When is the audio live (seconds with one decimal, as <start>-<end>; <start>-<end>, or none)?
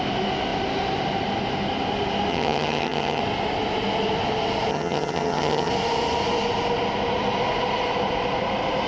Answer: 0.0-2.3; 3.2-4.7; 5.7-8.9